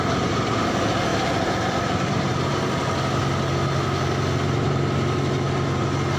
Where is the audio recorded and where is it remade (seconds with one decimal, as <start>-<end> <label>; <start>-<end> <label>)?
0.0-1.1 recorded; 1.1-2.2 remade; 2.2-6.2 recorded